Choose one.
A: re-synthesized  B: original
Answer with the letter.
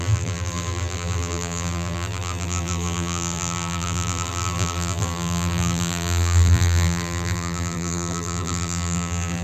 A